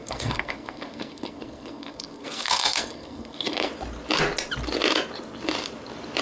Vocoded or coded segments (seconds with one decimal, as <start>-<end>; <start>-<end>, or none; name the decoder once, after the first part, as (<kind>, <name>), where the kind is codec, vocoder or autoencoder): 0.0-3.7 (codec, SNAC)